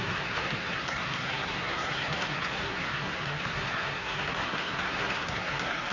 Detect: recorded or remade remade